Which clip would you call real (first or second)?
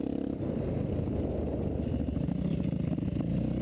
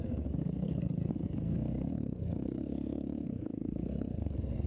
first